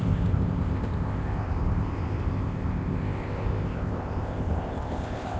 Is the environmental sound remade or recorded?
remade